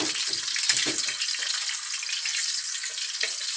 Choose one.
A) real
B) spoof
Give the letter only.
A